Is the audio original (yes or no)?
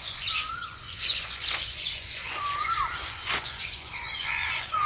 no